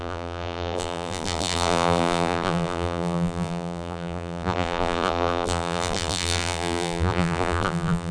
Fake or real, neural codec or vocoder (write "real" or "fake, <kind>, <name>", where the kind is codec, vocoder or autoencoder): fake, vocoder, BigVGAN v2